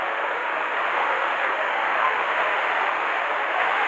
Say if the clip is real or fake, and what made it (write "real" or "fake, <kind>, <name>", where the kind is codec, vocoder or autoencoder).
fake, autoencoder, DAC-VAE